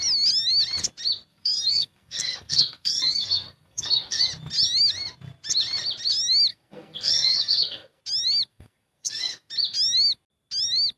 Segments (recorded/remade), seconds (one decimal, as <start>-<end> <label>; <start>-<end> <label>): 0.0-1.3 recorded; 1.3-4.2 remade; 4.2-6.5 recorded; 6.5-8.0 remade; 8.0-8.5 recorded; 8.5-9.5 remade; 9.5-11.0 recorded